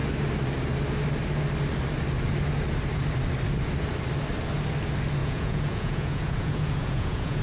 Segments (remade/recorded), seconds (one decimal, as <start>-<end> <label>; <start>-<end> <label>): 0.0-5.2 recorded; 5.2-7.4 remade